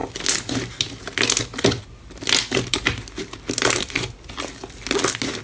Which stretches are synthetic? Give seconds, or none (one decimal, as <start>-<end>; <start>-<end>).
none